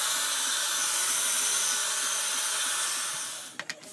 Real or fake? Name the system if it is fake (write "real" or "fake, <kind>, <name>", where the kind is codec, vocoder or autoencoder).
real